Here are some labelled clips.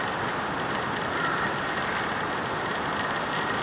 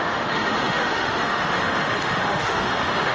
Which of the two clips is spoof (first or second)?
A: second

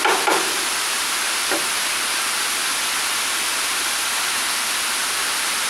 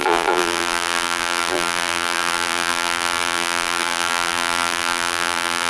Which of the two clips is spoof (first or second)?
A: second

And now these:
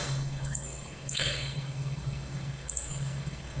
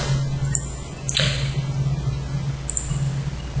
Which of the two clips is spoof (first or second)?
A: first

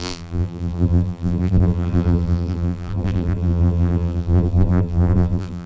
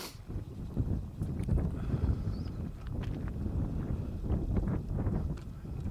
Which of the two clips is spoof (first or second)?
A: first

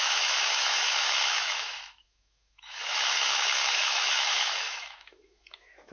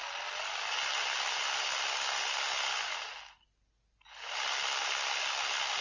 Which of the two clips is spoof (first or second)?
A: first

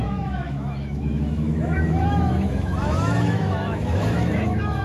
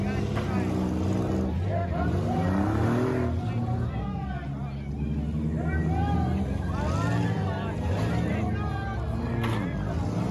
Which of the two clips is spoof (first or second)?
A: first